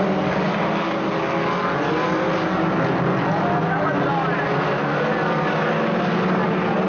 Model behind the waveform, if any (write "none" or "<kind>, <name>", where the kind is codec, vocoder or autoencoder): none